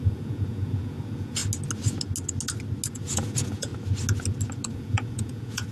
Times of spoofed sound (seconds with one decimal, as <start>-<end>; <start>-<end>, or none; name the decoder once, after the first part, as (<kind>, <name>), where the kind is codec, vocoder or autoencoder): 0.0-1.4 (vocoder, Vocos); 2.9-3.7; 4.7-5.7